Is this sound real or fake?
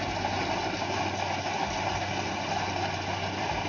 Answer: real